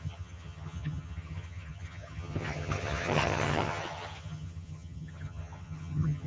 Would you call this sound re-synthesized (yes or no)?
yes